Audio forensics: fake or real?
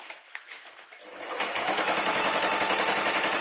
fake